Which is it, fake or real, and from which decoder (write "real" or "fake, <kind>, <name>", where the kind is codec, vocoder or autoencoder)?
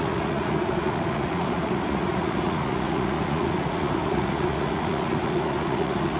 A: fake, vocoder, Vocos